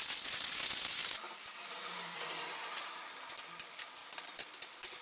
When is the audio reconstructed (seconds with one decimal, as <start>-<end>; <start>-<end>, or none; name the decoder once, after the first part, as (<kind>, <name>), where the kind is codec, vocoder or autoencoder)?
1.0-3.3 (vocoder, BigVGAN v2)